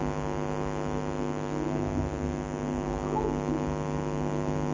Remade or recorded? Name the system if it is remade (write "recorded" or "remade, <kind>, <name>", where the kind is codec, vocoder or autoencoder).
recorded